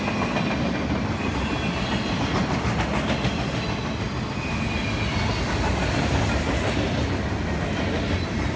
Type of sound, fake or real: real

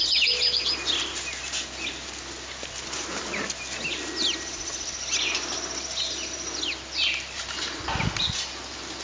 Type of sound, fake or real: real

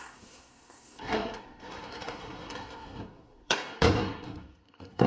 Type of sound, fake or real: fake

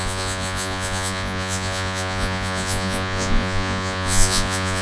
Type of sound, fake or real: fake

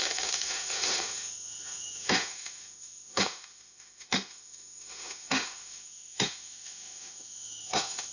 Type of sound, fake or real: fake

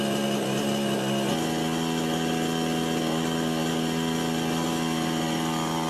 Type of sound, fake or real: real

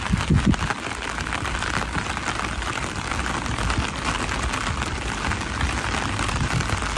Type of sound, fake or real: real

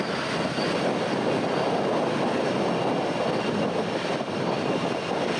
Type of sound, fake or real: real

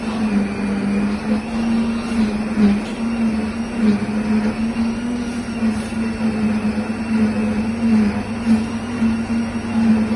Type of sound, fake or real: real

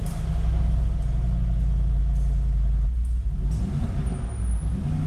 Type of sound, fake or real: real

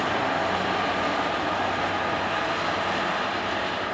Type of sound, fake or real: real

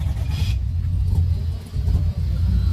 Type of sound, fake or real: real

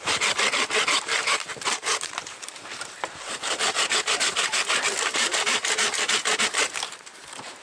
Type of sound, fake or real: fake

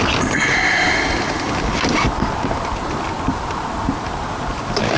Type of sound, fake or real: real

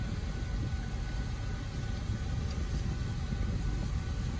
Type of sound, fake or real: real